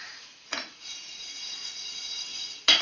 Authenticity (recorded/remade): remade